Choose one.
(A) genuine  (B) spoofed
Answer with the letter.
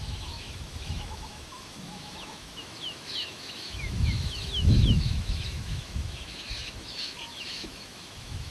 B